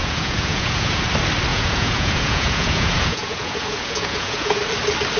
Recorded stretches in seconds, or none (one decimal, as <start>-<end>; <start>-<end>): 1.0-1.5; 4.6-5.2

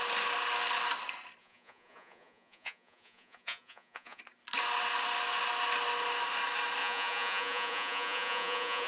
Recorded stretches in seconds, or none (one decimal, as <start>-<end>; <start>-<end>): 0.0-1.4; 4.2-6.8

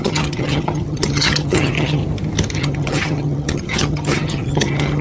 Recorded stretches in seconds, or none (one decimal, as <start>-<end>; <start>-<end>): 2.0-2.6

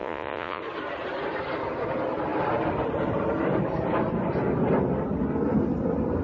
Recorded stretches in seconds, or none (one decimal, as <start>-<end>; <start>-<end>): 0.6-6.2

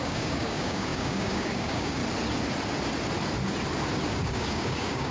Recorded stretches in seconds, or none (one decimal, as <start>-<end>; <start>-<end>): 2.0-4.1

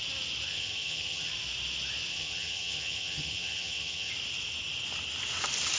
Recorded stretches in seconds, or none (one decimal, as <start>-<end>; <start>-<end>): 0.0-0.5; 1.3-2.1; 4.1-5.8